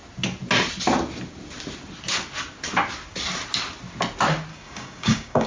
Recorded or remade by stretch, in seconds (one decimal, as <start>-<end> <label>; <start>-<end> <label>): 0.0-4.5 recorded; 4.5-5.5 remade